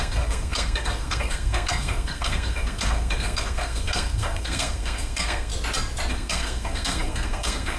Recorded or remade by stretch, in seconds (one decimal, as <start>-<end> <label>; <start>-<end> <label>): 0.0-5.5 remade; 5.5-6.1 recorded; 6.1-7.8 remade